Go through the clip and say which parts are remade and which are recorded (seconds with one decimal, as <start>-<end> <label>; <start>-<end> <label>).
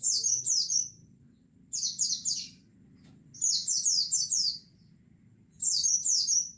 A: 0.0-6.6 recorded